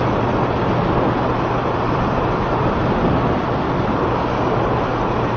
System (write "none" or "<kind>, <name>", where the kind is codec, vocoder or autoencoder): none